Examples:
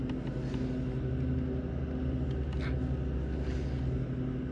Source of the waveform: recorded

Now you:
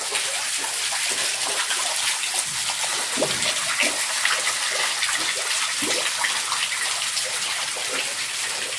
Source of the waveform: recorded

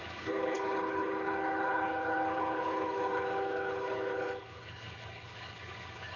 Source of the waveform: remade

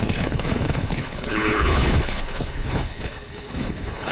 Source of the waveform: remade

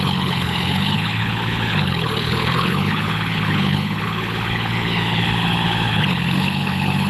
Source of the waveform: remade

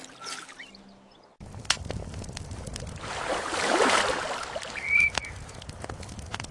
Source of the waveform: recorded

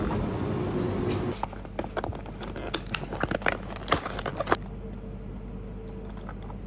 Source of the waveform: recorded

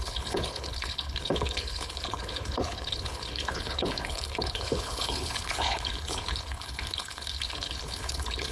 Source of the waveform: remade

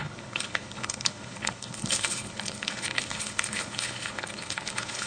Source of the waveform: remade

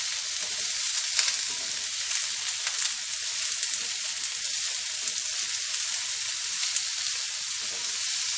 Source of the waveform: recorded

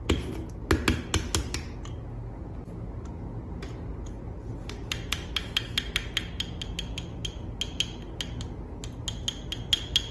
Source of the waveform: recorded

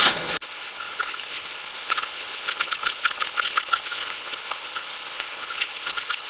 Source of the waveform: remade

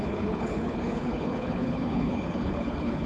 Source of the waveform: remade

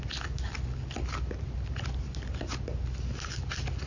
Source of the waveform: recorded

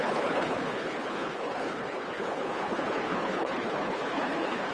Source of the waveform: remade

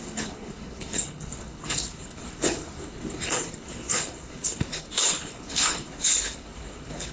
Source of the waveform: remade